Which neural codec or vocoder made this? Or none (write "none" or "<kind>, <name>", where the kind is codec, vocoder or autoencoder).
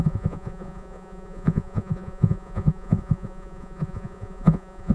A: vocoder, Vocos